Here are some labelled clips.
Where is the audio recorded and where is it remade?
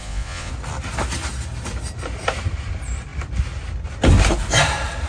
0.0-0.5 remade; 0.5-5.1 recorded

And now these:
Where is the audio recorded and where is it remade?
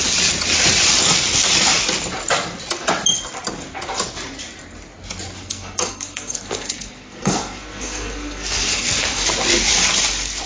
0.0-5.4 recorded; 5.4-9.3 remade; 9.3-10.5 recorded